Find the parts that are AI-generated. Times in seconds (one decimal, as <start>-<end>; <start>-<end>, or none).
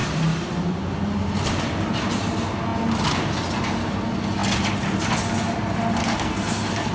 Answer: 6.0-6.9